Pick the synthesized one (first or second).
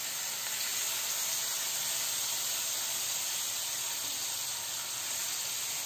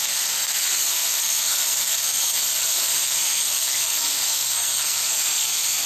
second